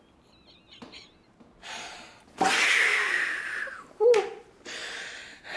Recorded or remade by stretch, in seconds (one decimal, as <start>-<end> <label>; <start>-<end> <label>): 0.0-5.6 recorded